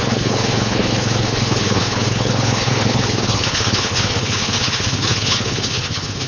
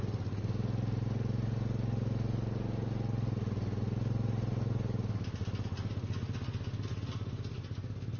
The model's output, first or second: first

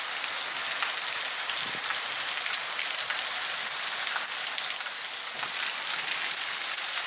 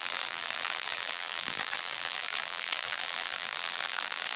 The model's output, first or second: second